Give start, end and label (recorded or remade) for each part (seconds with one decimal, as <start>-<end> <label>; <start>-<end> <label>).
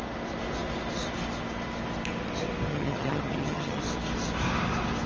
0.0-2.7 recorded; 2.7-3.8 remade; 3.8-5.1 recorded